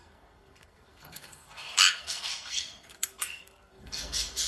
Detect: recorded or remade remade